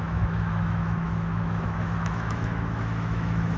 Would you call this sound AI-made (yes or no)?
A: yes